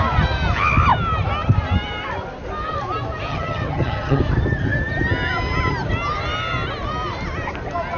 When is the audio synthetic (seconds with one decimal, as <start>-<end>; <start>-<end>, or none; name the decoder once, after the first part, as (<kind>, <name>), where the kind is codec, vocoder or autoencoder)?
3.3-4.2 (vocoder, HiFi-GAN)